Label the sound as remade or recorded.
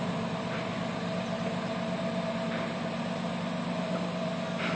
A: recorded